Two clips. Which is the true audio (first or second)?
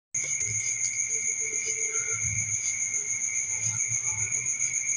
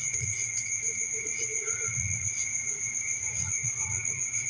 first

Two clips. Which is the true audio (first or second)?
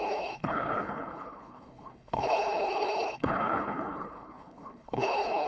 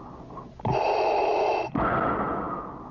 second